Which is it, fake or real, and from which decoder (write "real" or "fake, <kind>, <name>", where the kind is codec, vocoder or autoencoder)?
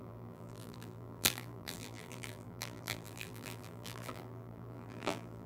fake, vocoder, BigVGAN v2